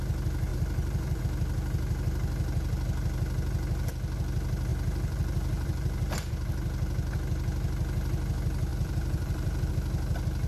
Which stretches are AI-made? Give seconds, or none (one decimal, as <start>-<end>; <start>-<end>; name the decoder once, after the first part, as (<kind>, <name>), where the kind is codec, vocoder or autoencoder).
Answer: 0.5-1.2 (vocoder, BigVGAN v2); 4.7-6.3; 8.7-9.7